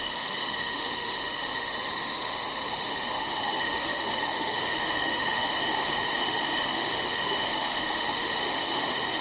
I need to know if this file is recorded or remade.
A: remade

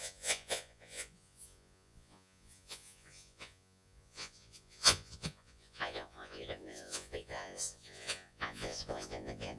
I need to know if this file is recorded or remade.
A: remade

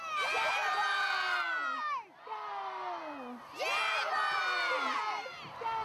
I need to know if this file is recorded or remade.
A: recorded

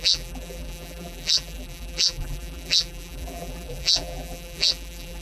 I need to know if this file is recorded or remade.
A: remade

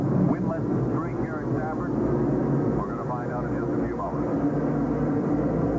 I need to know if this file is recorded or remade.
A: recorded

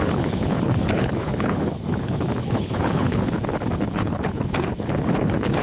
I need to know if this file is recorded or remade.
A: remade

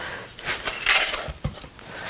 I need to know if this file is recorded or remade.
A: remade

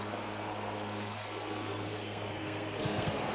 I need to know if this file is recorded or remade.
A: remade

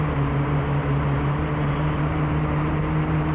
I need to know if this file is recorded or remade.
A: remade